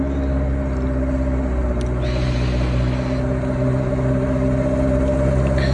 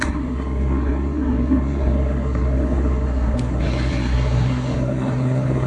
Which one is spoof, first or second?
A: second